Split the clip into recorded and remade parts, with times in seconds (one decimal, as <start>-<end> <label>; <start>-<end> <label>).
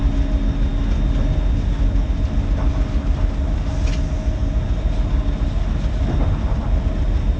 0.0-7.4 recorded